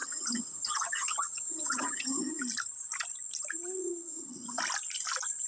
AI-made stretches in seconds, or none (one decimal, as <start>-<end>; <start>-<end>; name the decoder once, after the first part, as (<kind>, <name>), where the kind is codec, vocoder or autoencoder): 0.0-2.4 (vocoder, HiFi-GAN); 3.8-4.6